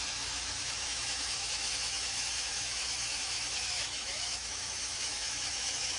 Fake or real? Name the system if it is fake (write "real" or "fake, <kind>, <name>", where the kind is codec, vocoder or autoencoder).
fake, autoencoder, DAC-VAE